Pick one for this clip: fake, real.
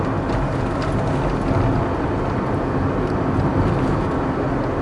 real